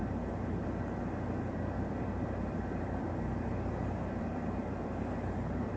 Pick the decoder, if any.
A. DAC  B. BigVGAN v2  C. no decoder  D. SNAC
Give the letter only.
B